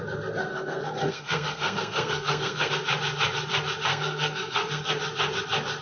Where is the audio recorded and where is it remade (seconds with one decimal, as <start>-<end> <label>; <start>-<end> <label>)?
0.0-0.5 recorded; 0.5-2.7 remade; 2.7-3.9 recorded; 3.9-4.9 remade; 4.9-5.8 recorded